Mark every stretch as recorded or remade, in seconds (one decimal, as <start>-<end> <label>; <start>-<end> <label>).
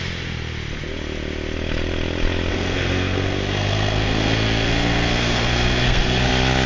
0.0-2.5 recorded; 2.5-6.3 remade; 6.3-6.7 recorded